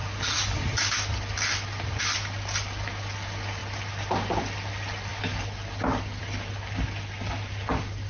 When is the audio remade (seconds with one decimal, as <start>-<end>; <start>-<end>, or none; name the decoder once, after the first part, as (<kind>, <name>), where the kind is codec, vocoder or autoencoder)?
none